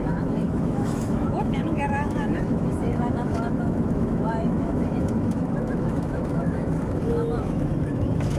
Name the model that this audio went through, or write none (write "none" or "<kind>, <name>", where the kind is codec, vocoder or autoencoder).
autoencoder, DAC-VAE